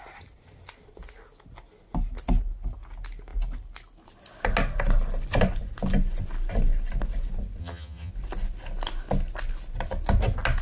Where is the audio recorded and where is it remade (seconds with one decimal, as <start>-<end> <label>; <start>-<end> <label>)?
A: 0.0-7.6 recorded; 7.6-8.1 remade; 8.1-10.6 recorded